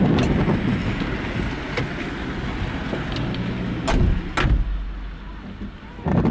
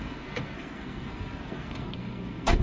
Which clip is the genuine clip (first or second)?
first